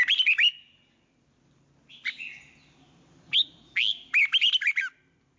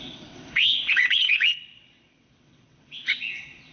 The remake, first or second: second